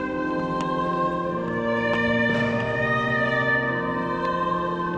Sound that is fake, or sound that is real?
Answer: real